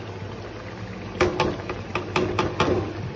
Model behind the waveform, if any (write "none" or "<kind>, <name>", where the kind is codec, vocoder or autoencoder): none